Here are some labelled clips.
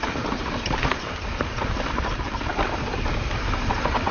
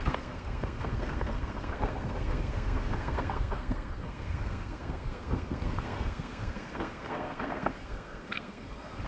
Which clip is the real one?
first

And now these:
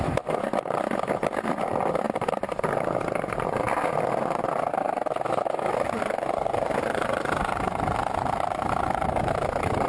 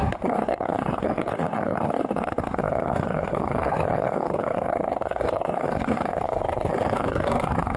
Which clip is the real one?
first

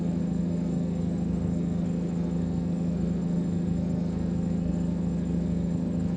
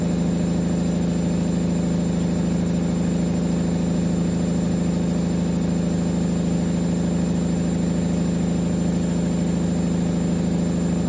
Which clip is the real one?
second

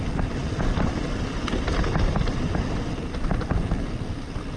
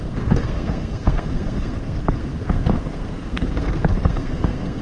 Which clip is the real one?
first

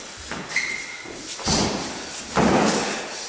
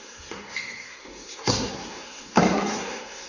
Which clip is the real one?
first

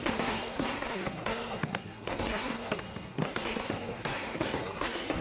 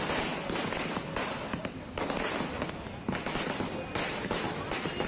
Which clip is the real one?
second